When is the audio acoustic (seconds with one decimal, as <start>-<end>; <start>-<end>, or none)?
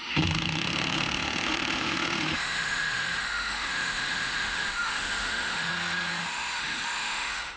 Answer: 5.7-6.2